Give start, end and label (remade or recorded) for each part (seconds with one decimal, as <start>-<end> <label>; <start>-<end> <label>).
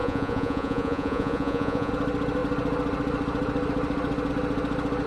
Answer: 0.0-1.9 remade; 1.9-5.1 recorded